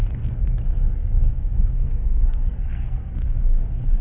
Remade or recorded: remade